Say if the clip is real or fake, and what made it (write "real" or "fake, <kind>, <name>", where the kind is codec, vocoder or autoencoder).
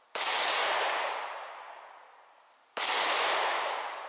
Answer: real